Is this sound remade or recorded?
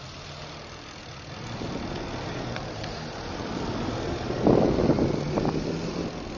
recorded